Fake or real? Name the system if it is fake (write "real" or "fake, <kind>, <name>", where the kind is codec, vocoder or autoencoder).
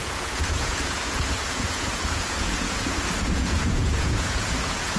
fake, vocoder, Vocos